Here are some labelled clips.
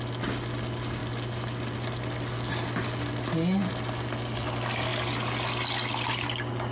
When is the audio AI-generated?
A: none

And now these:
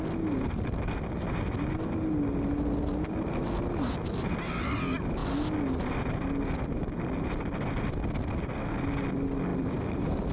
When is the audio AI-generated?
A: none

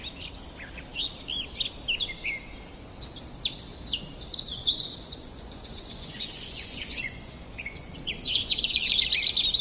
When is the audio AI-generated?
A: 4.5-9.0 (vocoder, Vocos)

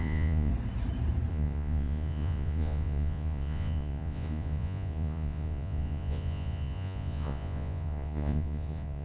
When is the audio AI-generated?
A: 0.0-0.5 (vocoder, Vocos); 1.3-9.0